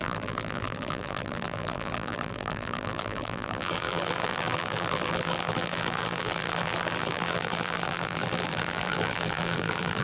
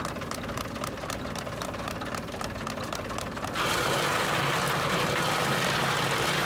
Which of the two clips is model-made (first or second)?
first